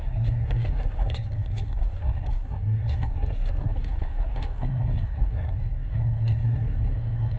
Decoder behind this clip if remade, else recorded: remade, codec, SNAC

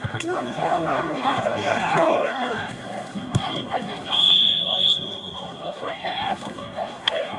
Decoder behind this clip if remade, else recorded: remade, codec, SNAC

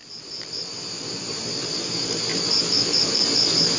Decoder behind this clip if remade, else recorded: remade, vocoder, BigVGAN v2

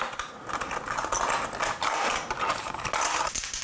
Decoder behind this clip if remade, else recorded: recorded